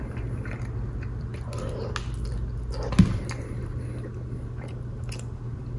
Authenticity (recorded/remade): recorded